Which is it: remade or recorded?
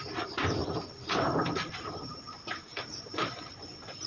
remade